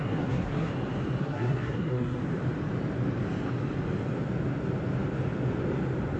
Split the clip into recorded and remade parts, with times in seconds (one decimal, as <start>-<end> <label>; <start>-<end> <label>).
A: 0.0-0.7 remade; 0.7-1.2 recorded; 1.2-2.2 remade; 2.2-6.2 recorded